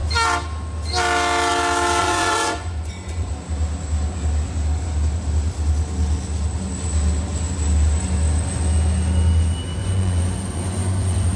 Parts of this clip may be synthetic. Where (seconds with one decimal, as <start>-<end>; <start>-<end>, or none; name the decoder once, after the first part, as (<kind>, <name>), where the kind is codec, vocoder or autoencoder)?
2.0-3.3 (vocoder, Vocos); 9.8-11.4